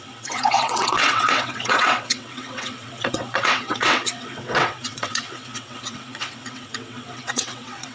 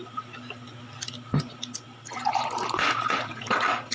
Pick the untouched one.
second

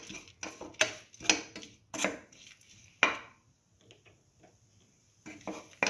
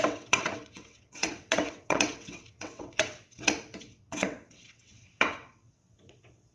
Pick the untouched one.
first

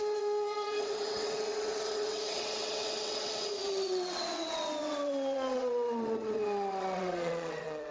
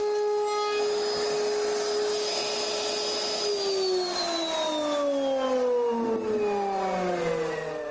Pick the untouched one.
second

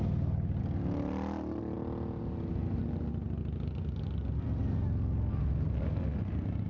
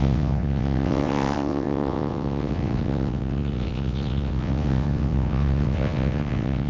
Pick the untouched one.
first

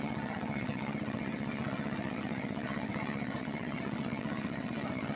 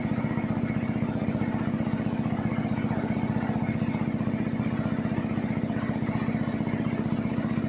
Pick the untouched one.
second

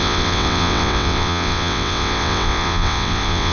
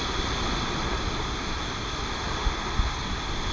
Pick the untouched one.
second